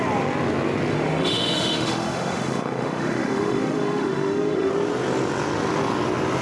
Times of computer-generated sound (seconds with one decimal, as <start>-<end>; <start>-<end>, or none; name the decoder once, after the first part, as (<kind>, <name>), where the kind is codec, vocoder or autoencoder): 0.9-4.7 (autoencoder, DAC-VAE)